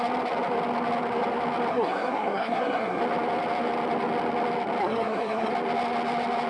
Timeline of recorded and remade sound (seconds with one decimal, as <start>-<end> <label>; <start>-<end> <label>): 0.0-1.7 recorded; 1.7-3.0 remade; 3.0-4.8 recorded; 4.8-5.5 remade; 5.5-6.5 recorded